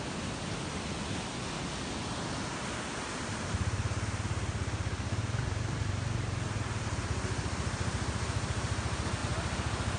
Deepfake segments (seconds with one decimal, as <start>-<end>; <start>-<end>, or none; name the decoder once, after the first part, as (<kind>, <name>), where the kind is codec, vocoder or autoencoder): none